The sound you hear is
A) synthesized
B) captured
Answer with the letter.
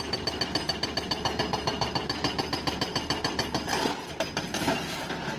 B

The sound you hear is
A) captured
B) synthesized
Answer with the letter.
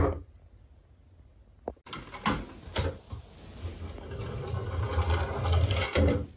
A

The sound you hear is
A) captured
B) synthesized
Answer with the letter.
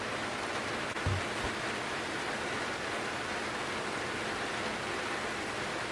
A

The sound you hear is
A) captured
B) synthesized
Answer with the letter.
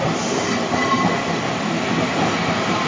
A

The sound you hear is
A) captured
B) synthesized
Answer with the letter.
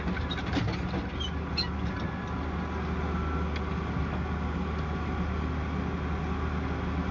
A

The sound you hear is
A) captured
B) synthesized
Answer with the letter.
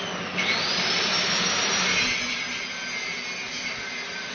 A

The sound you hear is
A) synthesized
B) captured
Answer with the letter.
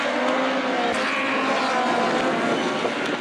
B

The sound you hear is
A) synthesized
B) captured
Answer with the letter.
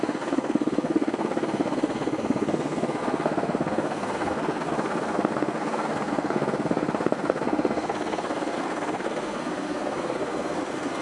A